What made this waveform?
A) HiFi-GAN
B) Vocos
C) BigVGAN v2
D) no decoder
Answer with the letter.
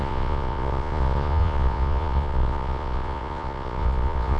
B